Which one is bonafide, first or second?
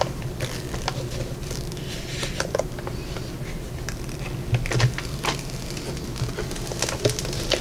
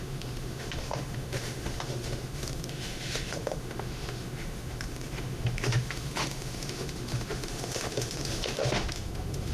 first